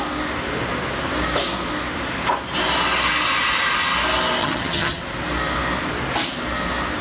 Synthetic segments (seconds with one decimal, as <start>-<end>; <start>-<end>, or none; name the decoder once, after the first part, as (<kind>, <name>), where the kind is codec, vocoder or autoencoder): 4.4-5.0 (vocoder, HiFi-GAN)